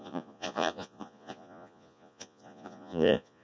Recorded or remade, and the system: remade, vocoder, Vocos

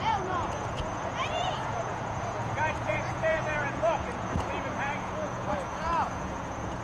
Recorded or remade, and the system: remade, vocoder, Vocos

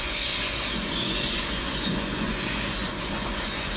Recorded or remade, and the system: remade, vocoder, Vocos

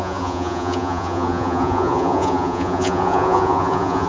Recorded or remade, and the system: remade, vocoder, Vocos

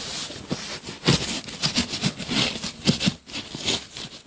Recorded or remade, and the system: recorded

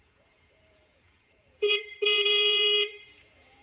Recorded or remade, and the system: remade, vocoder, Vocos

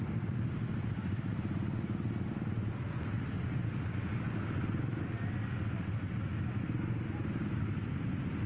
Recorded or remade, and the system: recorded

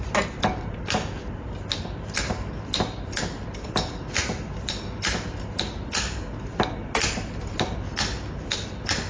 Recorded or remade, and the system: recorded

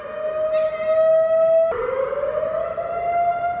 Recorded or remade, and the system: recorded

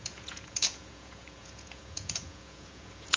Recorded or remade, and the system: remade, vocoder, Vocos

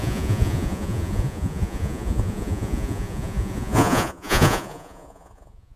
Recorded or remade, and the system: remade, vocoder, Vocos